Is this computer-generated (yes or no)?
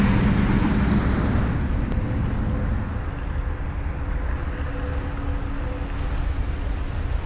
no